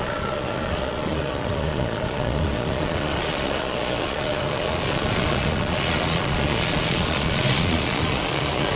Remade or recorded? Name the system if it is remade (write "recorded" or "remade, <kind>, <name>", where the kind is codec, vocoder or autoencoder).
remade, vocoder, Vocos